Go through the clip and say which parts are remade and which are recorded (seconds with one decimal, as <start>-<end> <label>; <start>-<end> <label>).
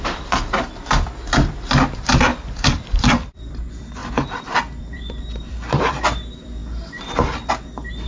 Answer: 0.0-4.0 remade; 4.0-4.8 recorded; 4.8-6.6 remade; 6.6-7.5 recorded; 7.5-8.1 remade